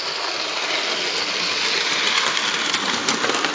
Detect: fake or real real